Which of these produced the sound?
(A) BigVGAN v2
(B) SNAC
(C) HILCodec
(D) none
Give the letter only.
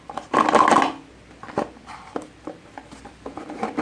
D